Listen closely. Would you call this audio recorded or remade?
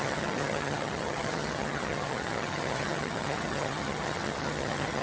remade